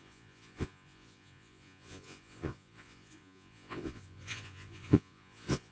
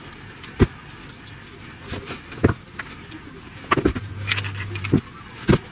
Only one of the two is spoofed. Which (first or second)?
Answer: first